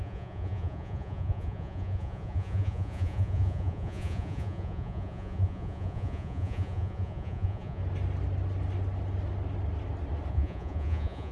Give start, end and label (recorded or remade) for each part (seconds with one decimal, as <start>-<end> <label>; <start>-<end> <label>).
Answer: 0.0-7.8 remade; 7.8-10.3 recorded; 10.3-11.3 remade